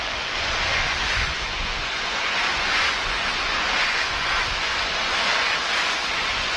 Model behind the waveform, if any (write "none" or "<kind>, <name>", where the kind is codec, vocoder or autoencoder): vocoder, Vocos